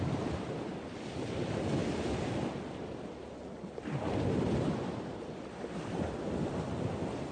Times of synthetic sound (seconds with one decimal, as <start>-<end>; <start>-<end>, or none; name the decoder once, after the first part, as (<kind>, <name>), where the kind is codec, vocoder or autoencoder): none